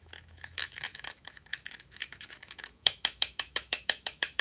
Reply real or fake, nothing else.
fake